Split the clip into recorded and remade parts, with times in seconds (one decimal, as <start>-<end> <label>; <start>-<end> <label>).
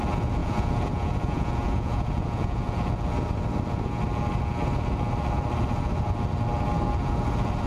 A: 0.0-0.4 recorded; 0.4-2.7 remade; 2.7-7.7 recorded